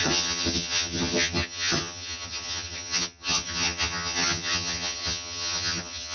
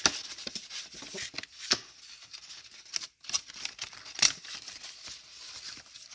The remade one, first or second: first